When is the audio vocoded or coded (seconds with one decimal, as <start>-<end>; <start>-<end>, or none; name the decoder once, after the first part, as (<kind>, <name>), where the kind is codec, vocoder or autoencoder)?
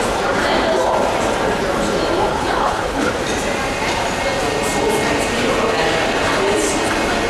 2.3-3.1 (codec, HILCodec)